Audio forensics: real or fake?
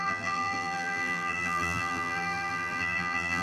fake